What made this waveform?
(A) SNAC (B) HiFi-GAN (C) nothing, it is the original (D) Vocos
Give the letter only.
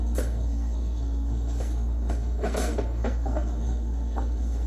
A